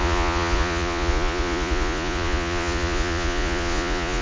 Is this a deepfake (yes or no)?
yes